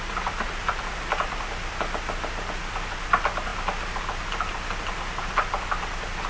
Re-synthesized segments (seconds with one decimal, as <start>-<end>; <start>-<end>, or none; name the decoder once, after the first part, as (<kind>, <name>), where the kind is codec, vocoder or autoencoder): none